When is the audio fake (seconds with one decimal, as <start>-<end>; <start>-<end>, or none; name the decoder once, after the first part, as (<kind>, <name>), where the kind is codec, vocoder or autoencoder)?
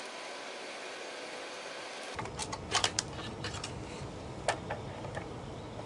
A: none